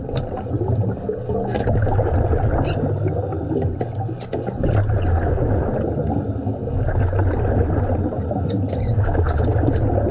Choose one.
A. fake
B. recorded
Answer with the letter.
B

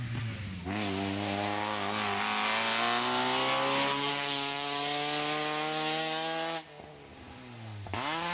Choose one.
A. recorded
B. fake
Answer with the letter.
A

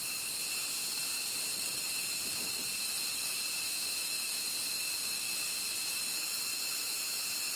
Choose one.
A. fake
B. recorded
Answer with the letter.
B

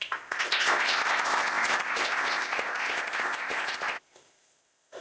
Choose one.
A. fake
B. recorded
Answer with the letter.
A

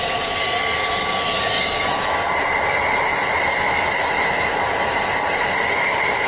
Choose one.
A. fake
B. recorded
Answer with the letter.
B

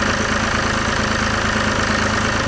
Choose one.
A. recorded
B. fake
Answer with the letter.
A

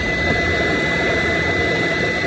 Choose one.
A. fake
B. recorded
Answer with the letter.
B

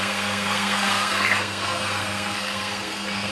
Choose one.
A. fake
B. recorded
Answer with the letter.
A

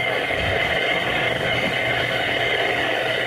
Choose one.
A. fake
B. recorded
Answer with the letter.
A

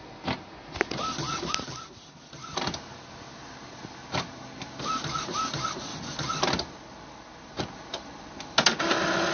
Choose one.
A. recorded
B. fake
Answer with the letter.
A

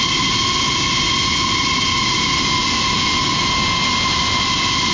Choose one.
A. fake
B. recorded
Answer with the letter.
B